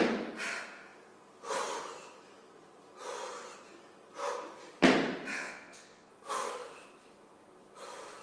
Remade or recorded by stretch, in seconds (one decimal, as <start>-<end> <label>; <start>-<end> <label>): 0.0-5.3 recorded; 5.3-6.1 remade; 6.1-8.2 recorded